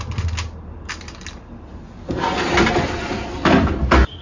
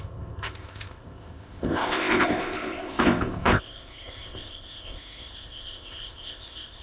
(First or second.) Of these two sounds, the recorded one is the first